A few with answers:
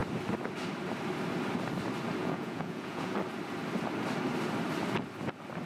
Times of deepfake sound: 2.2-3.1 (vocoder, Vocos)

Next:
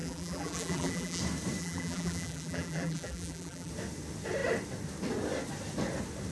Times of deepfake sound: 0.0-1.2 (vocoder, BigVGAN v2); 1.6-3.7

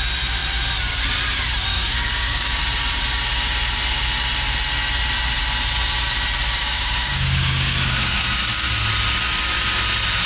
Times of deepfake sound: 1.7-2.6 (codec, DAC); 6.6-8.7

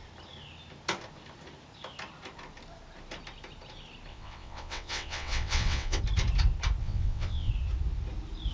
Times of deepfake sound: 4.1-6.0 (vocoder, WaveNeXt); 6.8-7.5